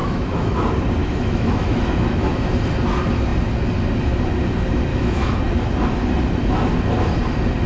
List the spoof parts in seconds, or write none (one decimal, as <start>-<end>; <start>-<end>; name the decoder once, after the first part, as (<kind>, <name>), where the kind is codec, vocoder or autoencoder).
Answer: 0.0-0.6 (autoencoder, DAC-VAE); 1.0-2.3; 4.9-5.4